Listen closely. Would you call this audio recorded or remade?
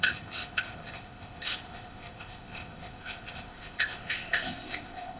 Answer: remade